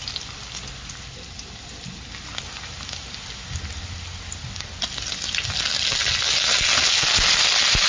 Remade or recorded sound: recorded